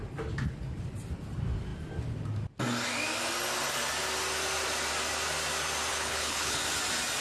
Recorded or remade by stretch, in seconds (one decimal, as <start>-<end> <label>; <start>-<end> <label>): 0.0-5.9 recorded; 5.9-6.6 remade; 6.6-7.2 recorded